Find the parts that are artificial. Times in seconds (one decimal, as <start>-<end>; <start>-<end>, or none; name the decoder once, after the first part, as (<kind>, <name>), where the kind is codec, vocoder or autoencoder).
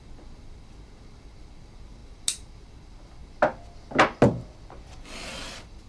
none